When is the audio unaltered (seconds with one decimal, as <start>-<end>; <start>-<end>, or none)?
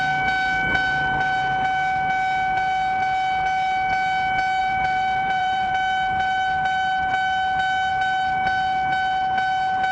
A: 0.0-4.6; 5.7-9.9